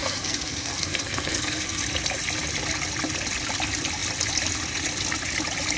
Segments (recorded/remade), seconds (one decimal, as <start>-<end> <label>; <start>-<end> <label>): 0.0-1.8 remade; 1.8-5.8 recorded